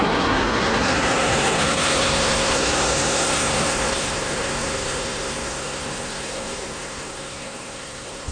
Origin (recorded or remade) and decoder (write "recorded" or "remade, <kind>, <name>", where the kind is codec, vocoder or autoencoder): remade, codec, SNAC